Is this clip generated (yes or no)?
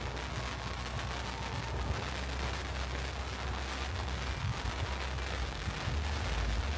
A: no